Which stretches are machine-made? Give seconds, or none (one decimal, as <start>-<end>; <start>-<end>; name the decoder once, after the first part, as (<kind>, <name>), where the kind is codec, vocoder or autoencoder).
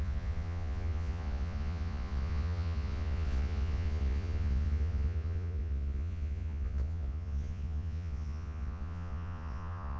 0.0-10.0 (vocoder, Vocos)